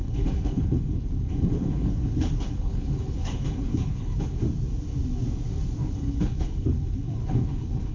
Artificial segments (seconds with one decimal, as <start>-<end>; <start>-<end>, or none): 0.0-4.4; 5.7-7.9